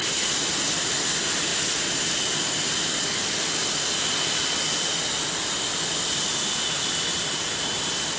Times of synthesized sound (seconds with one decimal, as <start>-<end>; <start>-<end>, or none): 7.1-7.7